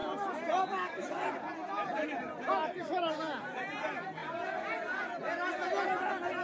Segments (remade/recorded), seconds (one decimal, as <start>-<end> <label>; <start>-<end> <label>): 0.0-6.4 recorded